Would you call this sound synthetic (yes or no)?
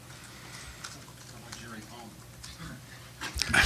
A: no